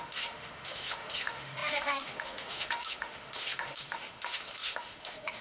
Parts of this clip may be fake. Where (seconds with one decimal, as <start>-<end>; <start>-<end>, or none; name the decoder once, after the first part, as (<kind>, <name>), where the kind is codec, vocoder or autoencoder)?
0.0-5.4 (autoencoder, DAC-VAE)